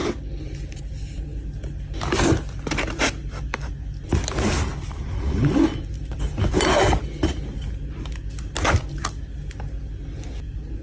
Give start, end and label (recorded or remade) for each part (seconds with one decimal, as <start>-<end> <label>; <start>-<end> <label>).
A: 0.0-10.8 recorded